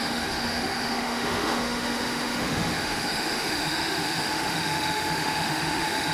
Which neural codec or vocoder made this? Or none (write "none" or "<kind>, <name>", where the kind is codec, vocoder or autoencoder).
autoencoder, DAC-VAE